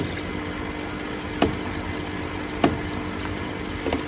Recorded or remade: recorded